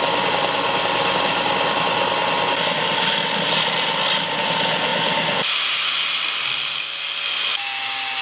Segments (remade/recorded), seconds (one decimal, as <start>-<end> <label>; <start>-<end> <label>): 0.0-8.2 recorded